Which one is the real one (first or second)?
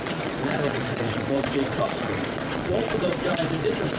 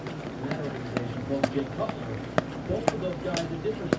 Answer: second